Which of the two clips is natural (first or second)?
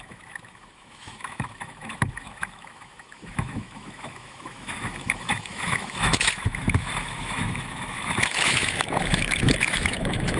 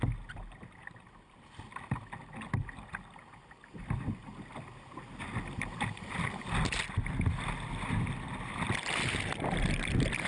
second